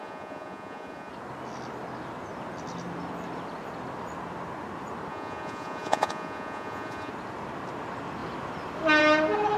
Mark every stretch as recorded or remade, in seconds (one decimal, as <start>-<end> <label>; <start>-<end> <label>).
0.0-1.1 remade; 1.1-5.1 recorded; 5.1-7.1 remade; 7.1-9.6 recorded